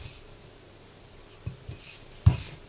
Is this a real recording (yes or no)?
yes